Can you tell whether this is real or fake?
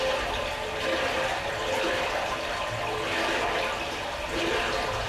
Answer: real